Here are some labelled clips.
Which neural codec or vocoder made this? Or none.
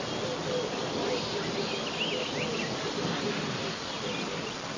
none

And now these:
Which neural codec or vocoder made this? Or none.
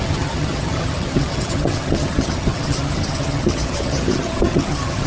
vocoder, HiFi-GAN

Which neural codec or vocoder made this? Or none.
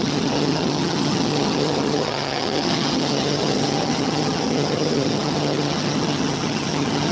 vocoder, HiFi-GAN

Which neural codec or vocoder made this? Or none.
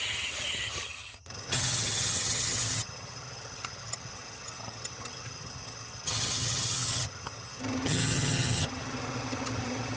vocoder, HiFi-GAN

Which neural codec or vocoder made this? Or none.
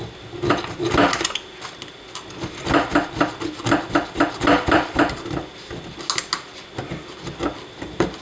none